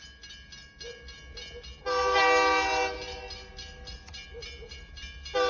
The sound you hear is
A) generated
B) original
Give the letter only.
B